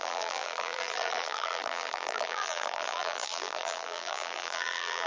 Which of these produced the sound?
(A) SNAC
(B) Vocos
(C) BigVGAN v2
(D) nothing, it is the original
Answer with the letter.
C